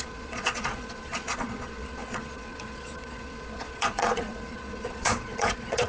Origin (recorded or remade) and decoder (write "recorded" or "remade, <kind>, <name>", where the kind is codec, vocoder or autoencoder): remade, vocoder, Vocos